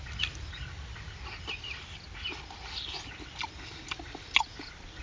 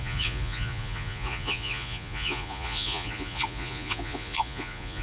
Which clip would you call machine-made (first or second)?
second